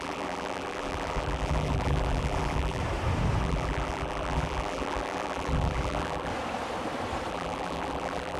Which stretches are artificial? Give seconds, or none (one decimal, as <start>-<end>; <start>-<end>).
0.0-2.8; 3.4-6.3; 7.3-8.4